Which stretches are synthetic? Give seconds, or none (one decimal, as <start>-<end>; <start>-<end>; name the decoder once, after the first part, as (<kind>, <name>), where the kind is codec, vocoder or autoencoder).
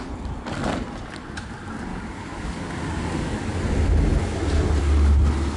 1.9-3.6 (codec, DAC)